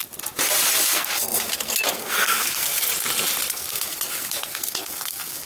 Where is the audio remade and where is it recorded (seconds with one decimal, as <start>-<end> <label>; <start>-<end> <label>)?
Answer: 0.0-0.9 recorded; 0.9-2.9 remade; 2.9-3.5 recorded; 3.5-5.5 remade